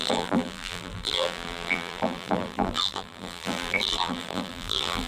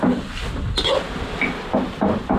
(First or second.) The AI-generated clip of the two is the first